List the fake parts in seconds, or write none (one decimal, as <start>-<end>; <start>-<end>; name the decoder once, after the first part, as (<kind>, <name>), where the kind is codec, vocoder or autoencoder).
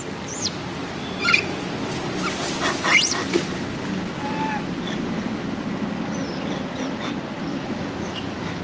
7.5-8.6 (autoencoder, DAC-VAE)